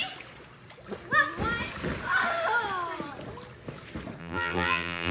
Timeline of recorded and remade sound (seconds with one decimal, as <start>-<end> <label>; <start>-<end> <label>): 0.0-4.2 recorded; 4.2-5.1 remade